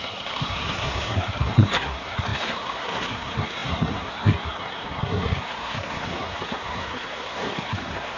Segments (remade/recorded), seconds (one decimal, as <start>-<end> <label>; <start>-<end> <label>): 0.0-8.2 remade